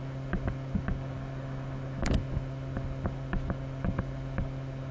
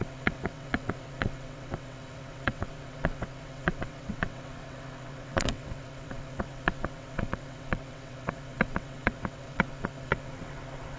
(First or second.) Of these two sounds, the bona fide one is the first